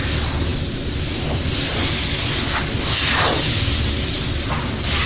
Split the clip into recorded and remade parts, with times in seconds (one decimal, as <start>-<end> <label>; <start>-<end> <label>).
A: 0.0-5.1 recorded